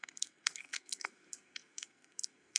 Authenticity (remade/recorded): remade